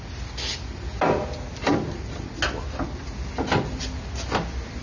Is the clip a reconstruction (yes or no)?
no